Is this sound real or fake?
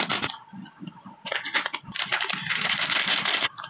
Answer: real